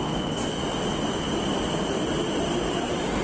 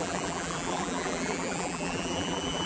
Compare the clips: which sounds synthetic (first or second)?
second